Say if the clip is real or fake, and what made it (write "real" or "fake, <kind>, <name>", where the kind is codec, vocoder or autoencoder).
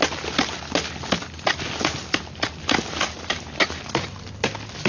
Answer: real